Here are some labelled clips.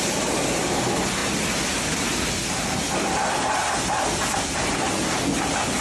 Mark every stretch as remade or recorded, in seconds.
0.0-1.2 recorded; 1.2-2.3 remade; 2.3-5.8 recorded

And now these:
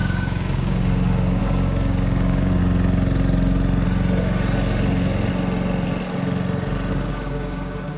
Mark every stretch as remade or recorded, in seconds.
0.0-2.6 remade; 2.6-6.9 recorded; 6.9-8.0 remade

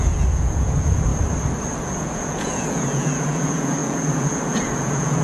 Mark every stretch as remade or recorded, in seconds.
0.0-1.1 remade; 1.1-1.8 recorded; 1.8-5.2 remade

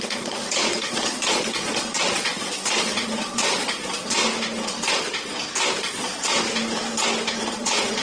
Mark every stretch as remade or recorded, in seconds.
0.0-4.2 remade; 4.2-5.8 recorded; 5.8-6.3 remade; 6.3-7.4 recorded; 7.4-8.0 remade